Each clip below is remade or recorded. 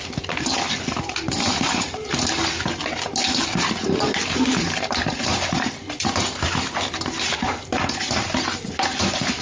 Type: recorded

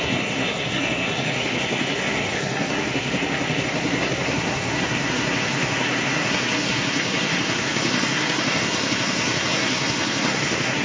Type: remade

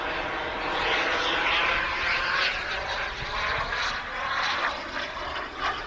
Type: recorded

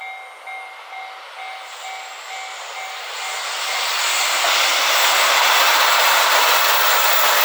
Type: recorded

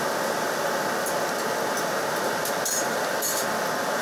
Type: recorded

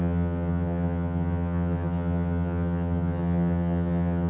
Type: remade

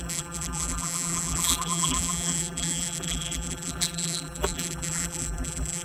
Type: remade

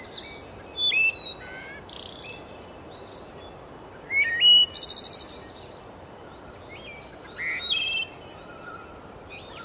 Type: recorded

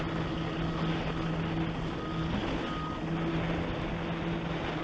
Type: recorded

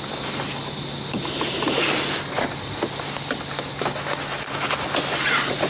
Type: recorded